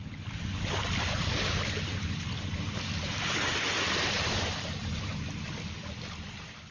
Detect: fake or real real